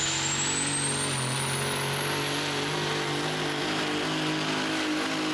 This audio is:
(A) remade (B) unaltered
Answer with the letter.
B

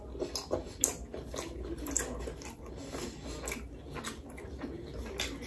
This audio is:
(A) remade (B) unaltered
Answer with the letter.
B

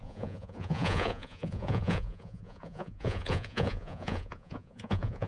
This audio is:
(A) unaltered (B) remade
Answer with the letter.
B